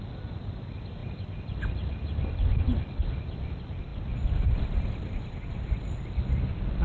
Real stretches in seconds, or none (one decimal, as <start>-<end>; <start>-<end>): 0.0-6.8